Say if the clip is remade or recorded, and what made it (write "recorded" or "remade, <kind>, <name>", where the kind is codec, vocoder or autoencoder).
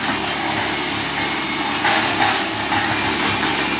recorded